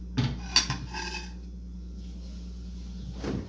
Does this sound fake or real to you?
real